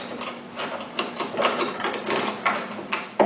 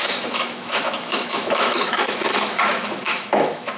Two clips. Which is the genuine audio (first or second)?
first